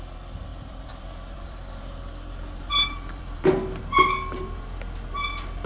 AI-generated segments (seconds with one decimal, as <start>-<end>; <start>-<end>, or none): 0.5-1.8; 2.7-3.5